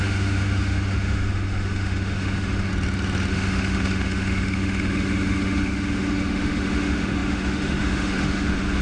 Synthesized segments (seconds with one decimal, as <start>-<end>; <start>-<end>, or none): 0.0-2.7; 3.3-8.8